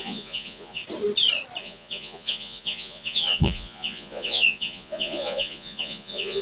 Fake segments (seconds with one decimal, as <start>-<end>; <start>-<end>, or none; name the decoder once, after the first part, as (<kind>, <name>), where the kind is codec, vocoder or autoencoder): 0.0-0.8 (vocoder, Vocos); 1.6-6.4